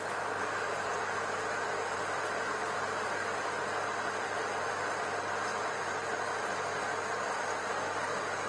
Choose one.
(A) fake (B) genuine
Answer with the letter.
B